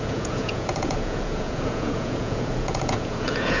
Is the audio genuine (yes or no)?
no